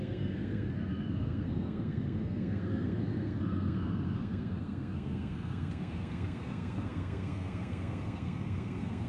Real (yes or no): no